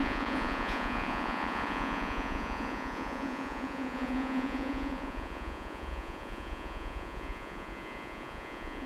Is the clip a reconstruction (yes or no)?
yes